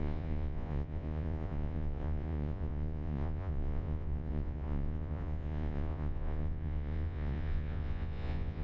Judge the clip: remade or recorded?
remade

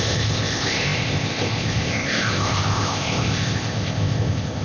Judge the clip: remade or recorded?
remade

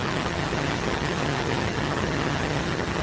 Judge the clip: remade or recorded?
remade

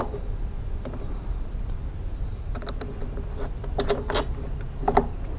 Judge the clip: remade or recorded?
recorded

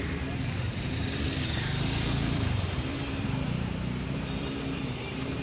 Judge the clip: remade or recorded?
remade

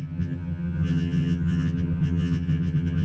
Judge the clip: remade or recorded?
remade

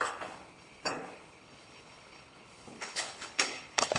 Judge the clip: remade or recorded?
remade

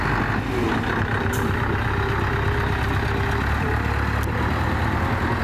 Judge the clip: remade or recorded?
recorded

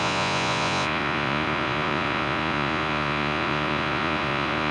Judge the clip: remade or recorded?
remade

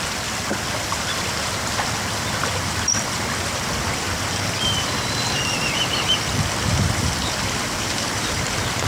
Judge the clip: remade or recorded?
remade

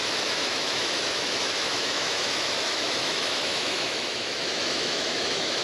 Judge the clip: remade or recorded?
remade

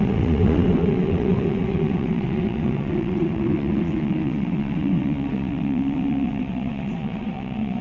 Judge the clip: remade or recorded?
remade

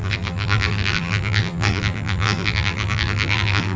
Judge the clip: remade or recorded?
remade